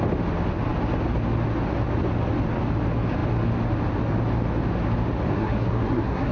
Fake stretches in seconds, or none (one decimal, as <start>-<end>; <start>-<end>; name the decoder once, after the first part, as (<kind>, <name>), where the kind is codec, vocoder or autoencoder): 5.3-6.3 (codec, SNAC)